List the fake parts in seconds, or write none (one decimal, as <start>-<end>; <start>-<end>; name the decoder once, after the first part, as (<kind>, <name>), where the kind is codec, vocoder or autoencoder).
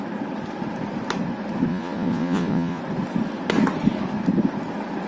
1.7-2.8 (vocoder, Vocos)